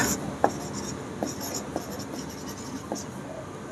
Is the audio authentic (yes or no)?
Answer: yes